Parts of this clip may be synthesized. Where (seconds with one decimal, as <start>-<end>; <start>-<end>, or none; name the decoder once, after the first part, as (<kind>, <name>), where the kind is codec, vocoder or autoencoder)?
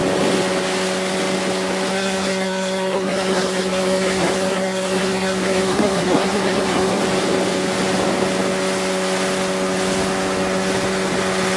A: 1.9-7.0 (codec, SNAC)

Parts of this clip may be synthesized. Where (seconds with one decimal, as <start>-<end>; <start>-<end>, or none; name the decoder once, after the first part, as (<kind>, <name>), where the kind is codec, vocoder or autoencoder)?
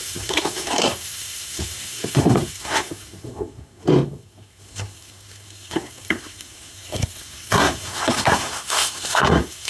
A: 0.0-9.7 (codec, SNAC)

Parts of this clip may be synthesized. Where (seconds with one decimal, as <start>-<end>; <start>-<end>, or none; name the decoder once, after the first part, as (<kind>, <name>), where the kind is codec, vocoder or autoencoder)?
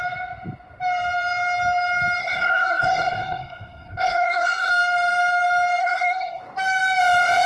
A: 2.2-4.7 (codec, SNAC); 5.8-6.4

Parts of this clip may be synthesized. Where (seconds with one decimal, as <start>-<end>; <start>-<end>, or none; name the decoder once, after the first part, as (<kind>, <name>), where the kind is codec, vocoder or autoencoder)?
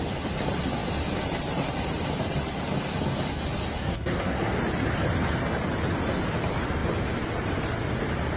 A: 3.8-4.6 (codec, SNAC)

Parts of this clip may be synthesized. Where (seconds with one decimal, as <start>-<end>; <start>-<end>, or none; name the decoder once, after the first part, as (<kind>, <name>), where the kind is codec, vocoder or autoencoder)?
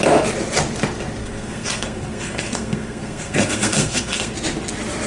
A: 1.2-4.3 (codec, SNAC)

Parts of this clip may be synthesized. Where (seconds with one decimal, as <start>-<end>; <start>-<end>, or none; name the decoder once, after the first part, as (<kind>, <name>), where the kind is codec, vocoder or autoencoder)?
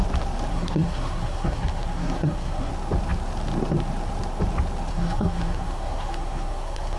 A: 0.5-2.7 (codec, SNAC); 4.9-7.0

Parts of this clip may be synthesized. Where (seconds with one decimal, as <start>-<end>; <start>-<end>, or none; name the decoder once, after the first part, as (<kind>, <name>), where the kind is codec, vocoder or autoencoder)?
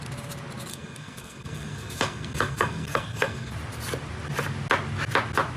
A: 0.7-3.5 (codec, SNAC)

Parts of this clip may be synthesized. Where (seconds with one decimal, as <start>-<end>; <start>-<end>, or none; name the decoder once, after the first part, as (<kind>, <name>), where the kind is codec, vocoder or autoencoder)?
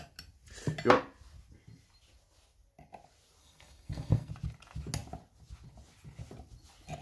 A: 3.4-4.3 (codec, SNAC)